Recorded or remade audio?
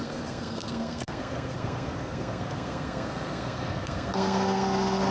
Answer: remade